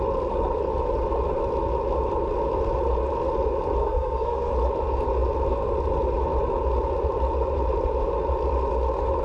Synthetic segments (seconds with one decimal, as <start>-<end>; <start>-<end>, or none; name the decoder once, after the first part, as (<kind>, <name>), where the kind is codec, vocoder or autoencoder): 3.8-4.5 (codec, SNAC)